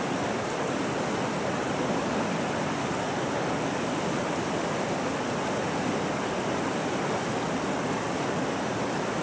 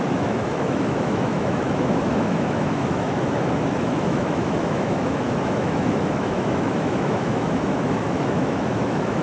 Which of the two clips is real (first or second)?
first